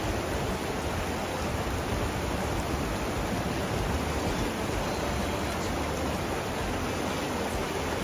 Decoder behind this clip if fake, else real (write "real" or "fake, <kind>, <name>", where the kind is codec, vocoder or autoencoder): real